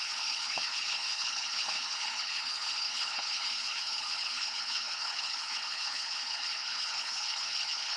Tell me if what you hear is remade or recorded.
remade